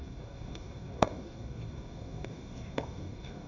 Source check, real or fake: fake